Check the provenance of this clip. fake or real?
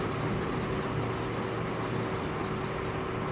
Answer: real